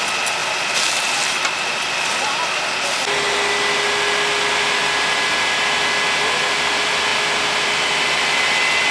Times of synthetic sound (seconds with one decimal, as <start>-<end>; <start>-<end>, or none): none